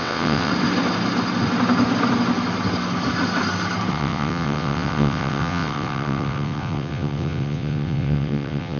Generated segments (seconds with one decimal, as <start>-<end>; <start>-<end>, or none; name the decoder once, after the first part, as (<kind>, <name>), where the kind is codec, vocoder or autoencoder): 0.0-0.5 (vocoder, WaveNeXt); 3.9-8.8